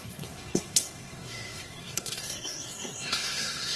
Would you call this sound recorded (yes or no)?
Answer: no